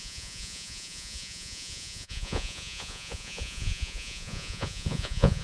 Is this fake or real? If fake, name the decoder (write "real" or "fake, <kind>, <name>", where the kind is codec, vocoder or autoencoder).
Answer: fake, vocoder, Vocos